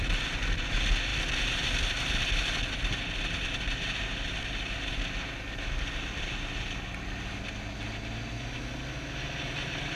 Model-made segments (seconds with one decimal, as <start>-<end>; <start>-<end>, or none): none